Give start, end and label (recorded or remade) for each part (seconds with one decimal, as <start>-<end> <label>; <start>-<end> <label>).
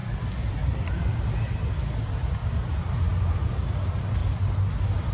0.0-0.8 recorded; 0.8-2.4 remade; 2.4-3.2 recorded; 3.2-4.2 remade; 4.2-5.1 recorded